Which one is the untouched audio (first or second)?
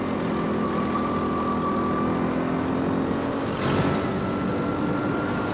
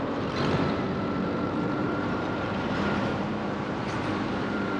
first